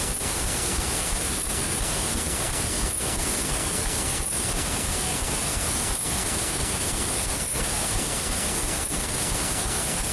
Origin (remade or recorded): remade